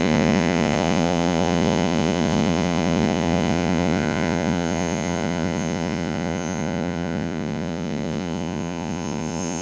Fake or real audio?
fake